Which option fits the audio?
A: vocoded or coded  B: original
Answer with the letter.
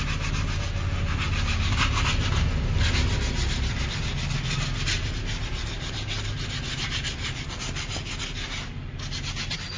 B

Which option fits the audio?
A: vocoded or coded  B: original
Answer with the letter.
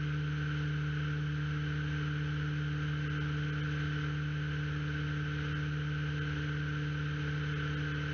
B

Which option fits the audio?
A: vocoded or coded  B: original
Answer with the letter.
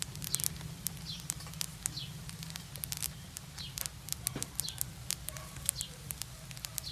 B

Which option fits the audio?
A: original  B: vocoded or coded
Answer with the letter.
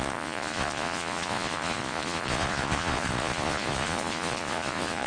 B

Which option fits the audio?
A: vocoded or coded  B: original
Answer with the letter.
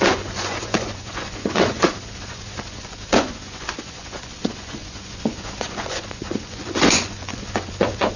A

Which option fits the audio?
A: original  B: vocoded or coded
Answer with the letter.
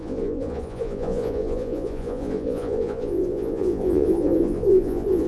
B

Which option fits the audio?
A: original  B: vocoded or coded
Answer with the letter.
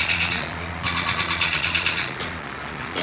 B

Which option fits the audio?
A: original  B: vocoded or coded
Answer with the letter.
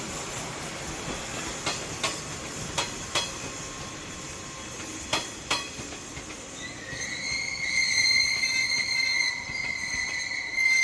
A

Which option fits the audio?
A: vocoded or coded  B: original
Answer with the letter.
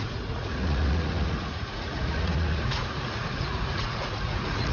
A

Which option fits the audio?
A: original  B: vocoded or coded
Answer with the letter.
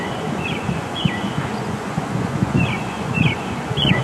B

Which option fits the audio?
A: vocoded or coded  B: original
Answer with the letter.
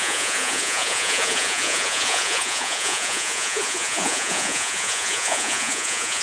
A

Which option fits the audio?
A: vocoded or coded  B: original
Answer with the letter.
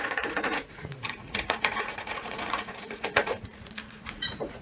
A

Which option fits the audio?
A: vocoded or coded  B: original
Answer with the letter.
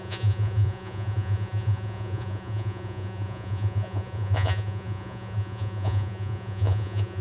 A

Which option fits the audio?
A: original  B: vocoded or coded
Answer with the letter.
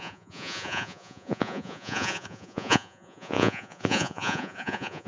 B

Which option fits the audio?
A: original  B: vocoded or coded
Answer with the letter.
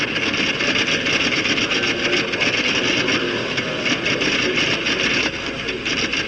A